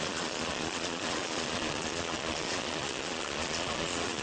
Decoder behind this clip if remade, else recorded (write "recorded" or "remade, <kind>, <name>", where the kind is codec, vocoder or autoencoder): remade, vocoder, Vocos